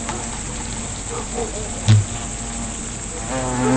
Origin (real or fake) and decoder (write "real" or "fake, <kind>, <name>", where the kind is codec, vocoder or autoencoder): real